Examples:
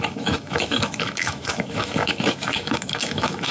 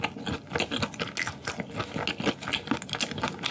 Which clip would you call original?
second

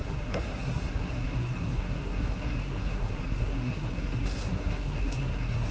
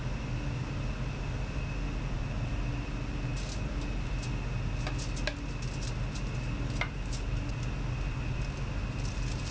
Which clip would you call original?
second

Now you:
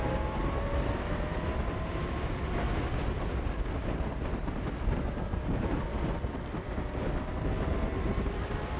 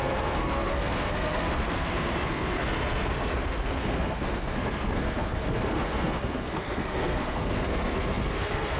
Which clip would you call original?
first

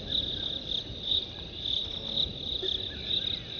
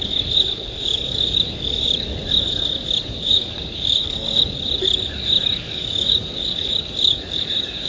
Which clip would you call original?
first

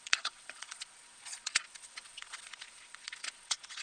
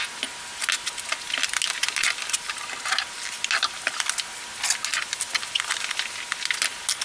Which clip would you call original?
second